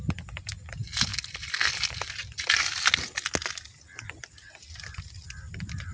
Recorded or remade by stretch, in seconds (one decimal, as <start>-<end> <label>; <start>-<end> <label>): 0.0-5.9 recorded